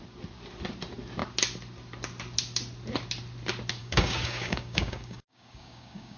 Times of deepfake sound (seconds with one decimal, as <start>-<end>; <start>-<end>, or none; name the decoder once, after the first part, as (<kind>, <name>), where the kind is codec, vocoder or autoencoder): 3.8-6.2 (codec, DAC)